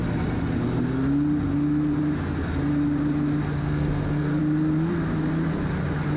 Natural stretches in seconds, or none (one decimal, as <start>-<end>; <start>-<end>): 0.0-3.6; 4.4-6.2